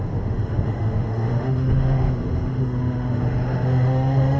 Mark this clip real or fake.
fake